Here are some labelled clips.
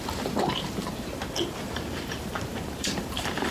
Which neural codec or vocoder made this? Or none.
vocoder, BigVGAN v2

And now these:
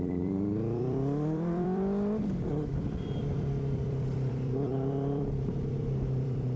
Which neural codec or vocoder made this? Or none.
vocoder, BigVGAN v2